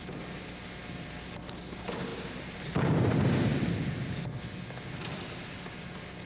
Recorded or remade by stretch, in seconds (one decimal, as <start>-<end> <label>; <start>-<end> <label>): 0.0-6.3 recorded